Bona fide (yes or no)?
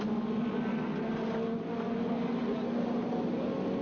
yes